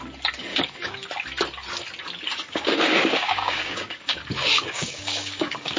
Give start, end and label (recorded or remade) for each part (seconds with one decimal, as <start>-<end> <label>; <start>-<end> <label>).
0.0-0.5 recorded; 0.5-1.1 remade; 1.1-2.3 recorded; 2.3-5.8 remade